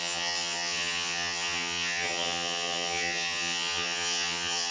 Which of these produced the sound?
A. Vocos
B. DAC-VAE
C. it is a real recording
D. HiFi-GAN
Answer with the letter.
D